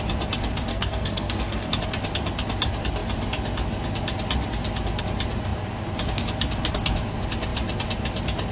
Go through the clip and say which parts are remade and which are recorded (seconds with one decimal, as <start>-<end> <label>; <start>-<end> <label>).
0.0-0.7 recorded; 0.7-1.7 remade; 1.7-8.5 recorded